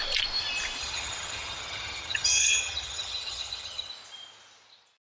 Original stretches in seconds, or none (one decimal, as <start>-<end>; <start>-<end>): 0.0-0.8; 3.9-5.1